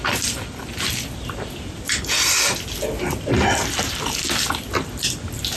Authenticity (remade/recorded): recorded